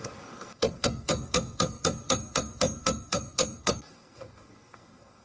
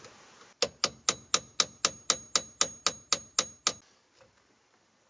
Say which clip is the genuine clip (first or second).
second